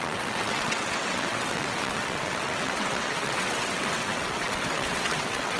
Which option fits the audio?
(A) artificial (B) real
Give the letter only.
A